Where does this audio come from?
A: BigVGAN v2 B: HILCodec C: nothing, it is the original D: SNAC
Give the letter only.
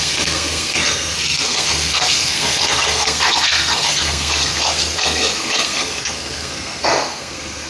D